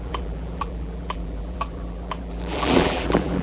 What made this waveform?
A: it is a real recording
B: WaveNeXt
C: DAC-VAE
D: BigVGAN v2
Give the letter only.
D